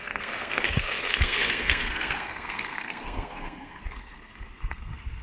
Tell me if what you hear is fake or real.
fake